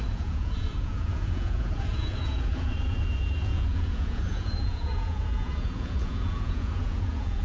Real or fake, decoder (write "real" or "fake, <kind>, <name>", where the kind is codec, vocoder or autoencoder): fake, vocoder, Vocos